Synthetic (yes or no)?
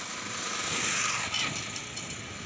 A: no